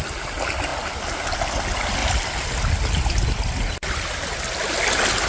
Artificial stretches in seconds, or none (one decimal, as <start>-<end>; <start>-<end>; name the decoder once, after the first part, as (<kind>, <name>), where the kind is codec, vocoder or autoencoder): none